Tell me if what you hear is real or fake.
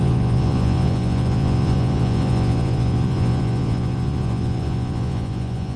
fake